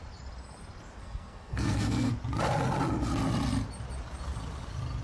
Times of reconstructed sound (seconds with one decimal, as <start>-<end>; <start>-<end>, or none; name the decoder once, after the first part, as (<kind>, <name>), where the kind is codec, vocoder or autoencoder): 1.0-2.1 (codec, SNAC)